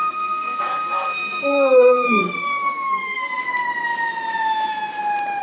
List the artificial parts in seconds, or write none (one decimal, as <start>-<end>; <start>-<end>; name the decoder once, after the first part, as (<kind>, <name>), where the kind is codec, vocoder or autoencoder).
0.0-3.4 (codec, SNAC)